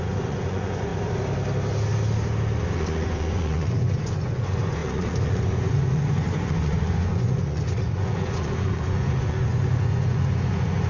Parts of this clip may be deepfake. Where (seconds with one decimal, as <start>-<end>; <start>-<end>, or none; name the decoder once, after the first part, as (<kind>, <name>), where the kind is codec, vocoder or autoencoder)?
0.0-0.9 (vocoder, Vocos); 2.7-10.9